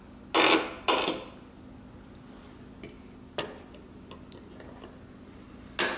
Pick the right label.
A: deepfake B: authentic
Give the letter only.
B